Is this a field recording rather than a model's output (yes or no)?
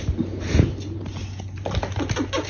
yes